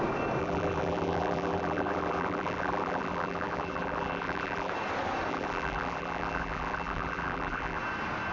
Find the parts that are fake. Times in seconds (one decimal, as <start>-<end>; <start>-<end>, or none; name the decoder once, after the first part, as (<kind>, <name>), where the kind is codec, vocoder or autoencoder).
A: 0.4-4.7 (vocoder, BigVGAN v2); 5.3-7.8